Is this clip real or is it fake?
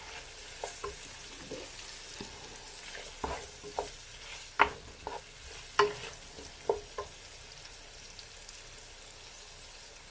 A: real